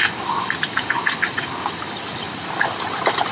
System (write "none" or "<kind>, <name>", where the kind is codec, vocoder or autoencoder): none